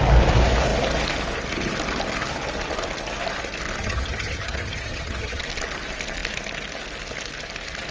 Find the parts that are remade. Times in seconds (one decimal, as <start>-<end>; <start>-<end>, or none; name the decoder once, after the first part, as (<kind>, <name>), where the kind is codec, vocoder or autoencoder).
3.8-5.4 (vocoder, HiFi-GAN)